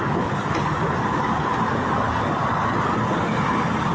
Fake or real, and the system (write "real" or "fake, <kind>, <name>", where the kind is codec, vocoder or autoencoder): real